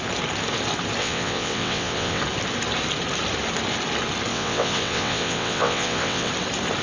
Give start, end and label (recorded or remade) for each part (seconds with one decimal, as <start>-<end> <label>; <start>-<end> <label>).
0.0-1.0 recorded; 1.0-2.2 remade; 2.2-4.3 recorded; 4.3-6.3 remade; 6.3-6.8 recorded